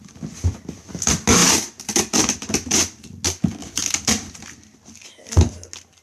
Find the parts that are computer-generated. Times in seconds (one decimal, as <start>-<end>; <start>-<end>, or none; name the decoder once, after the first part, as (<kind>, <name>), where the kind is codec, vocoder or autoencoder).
1.4-3.0 (vocoder, BigVGAN v2); 3.6-4.6